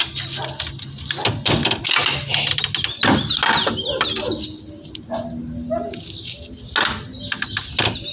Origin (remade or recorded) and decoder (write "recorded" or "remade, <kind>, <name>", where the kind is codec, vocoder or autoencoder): recorded